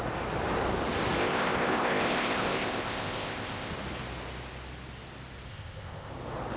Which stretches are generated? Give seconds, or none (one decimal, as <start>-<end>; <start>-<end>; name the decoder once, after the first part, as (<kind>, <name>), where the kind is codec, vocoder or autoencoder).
1.2-3.7 (codec, ZipCodec); 5.5-6.1